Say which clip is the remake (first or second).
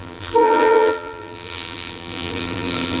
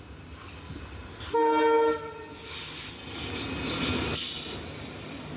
first